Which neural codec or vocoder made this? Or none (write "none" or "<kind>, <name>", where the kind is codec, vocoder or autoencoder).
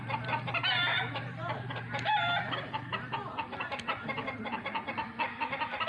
vocoder, BigVGAN v2